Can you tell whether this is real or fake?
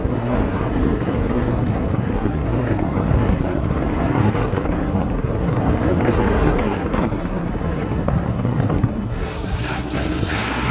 fake